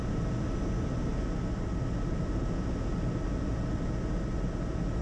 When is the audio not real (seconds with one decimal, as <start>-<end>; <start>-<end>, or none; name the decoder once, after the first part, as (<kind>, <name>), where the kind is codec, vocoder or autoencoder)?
none